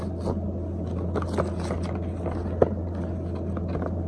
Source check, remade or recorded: recorded